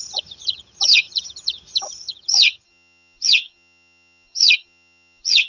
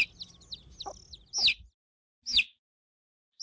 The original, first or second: second